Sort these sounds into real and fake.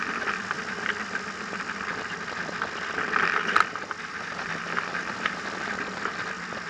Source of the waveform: fake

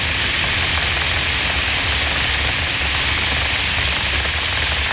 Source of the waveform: real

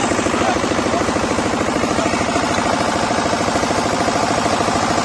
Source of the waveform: fake